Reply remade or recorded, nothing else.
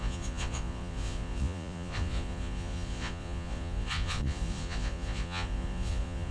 remade